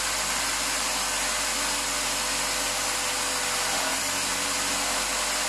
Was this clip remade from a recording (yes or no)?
no